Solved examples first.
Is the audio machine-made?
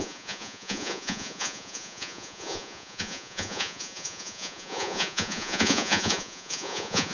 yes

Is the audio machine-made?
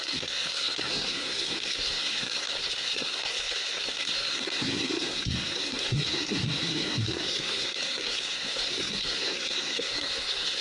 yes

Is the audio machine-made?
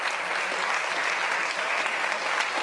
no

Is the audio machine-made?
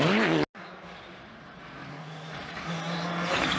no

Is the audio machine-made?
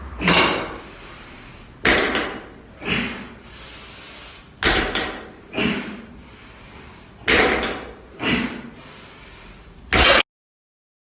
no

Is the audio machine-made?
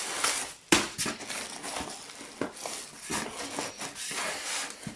no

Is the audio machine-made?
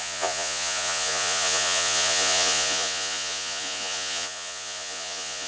yes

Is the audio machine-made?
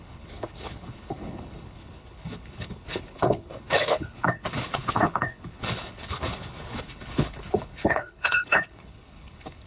yes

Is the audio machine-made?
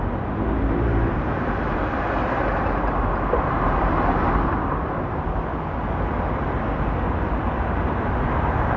no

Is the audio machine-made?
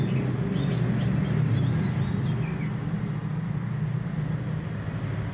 no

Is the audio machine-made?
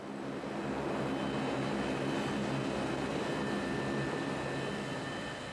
no